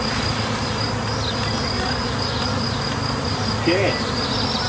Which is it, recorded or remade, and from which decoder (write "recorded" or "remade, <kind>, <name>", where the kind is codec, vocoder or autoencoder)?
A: recorded